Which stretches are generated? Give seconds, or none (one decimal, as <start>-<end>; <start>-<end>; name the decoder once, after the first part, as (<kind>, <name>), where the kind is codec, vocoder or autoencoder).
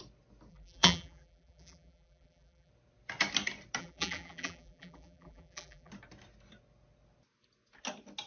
0.5-2.7 (vocoder, BigVGAN v2); 3.8-5.9